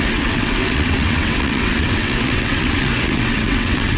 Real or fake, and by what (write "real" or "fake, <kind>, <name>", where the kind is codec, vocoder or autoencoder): fake, vocoder, WaveNeXt